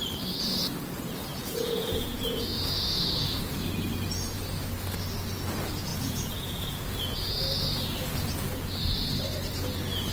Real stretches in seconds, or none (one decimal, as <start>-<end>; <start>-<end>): 0.0-1.3; 3.3-5.9; 7.4-10.1